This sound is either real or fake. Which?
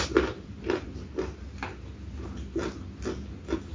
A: real